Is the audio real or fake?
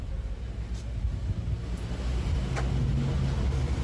real